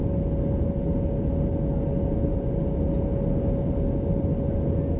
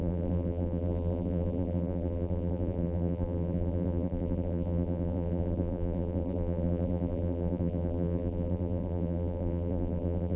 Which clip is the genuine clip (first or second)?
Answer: first